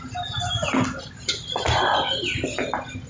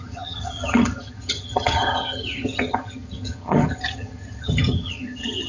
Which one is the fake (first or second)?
second